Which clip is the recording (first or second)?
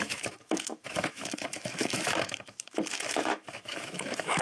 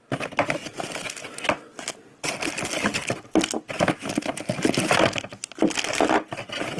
second